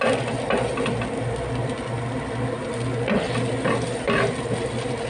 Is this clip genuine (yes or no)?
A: yes